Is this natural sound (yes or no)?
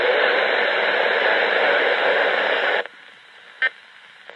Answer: yes